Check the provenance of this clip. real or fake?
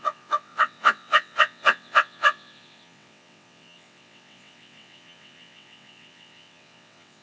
fake